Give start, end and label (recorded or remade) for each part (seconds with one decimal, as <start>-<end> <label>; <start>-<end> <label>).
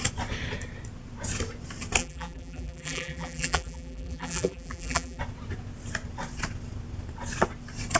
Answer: 0.0-2.0 recorded; 2.0-5.2 remade; 5.2-8.0 recorded